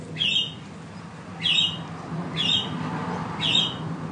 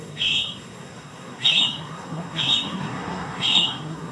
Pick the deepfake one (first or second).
second